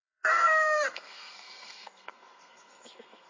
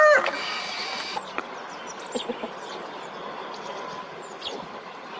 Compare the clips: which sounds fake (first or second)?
first